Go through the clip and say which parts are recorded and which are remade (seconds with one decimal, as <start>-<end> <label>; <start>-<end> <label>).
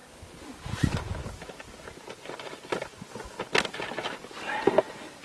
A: 0.0-5.2 recorded